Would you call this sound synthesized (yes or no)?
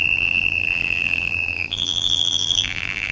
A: yes